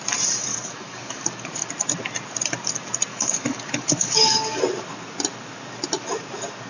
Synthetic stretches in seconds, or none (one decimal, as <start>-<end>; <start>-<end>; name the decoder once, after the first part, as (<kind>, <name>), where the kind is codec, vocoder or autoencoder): 0.5-1.7 (codec, DAC); 3.1-4.6